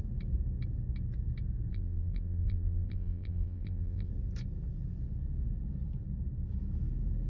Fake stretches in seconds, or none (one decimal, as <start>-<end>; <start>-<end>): 1.7-4.1